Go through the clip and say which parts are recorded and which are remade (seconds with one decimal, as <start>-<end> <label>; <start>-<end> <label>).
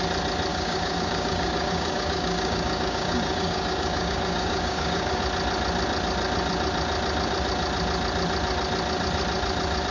0.0-0.5 recorded; 0.5-5.2 remade; 5.2-9.9 recorded